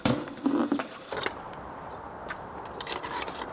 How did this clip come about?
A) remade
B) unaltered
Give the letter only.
A